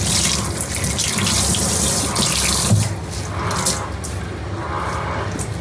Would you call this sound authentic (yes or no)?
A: yes